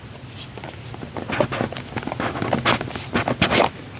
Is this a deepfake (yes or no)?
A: no